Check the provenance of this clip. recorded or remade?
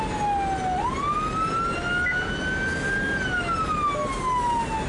recorded